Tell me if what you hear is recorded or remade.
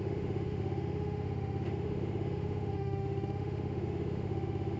remade